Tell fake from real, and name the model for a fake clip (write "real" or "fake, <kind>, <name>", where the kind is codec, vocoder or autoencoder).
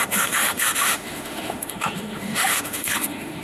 fake, autoencoder, DAC-VAE